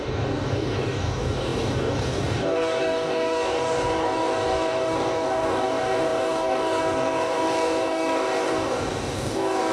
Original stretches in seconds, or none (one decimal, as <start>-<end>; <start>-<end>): none